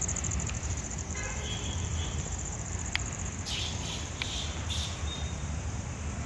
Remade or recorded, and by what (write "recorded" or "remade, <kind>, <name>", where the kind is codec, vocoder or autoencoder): remade, vocoder, BigVGAN v2